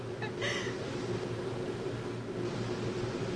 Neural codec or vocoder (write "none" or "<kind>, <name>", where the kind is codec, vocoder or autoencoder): none